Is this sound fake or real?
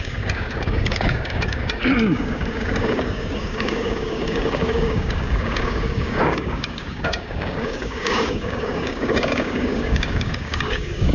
fake